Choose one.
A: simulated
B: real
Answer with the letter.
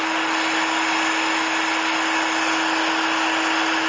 B